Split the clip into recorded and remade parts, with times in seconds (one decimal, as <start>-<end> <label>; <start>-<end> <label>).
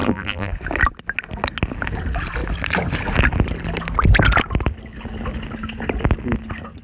0.0-0.5 remade; 0.5-6.8 recorded